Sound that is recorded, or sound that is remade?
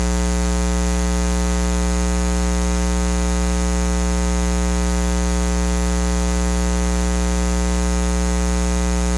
recorded